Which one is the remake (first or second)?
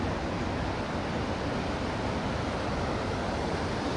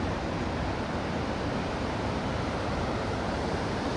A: second